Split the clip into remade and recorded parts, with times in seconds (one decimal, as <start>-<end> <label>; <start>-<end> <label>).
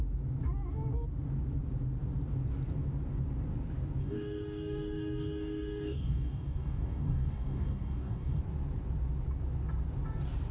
0.0-4.0 recorded; 4.0-8.4 remade; 8.4-10.5 recorded